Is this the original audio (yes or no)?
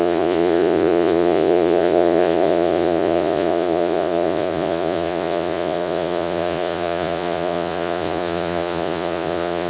no